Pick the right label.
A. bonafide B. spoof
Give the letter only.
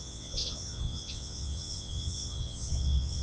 B